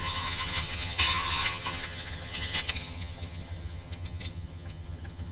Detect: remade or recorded remade